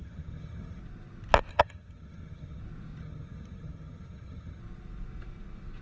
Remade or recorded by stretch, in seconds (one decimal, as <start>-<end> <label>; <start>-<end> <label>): 0.0-0.8 remade; 0.8-1.5 recorded; 1.5-2.6 remade; 2.6-3.0 recorded; 3.0-4.6 remade; 4.6-5.8 recorded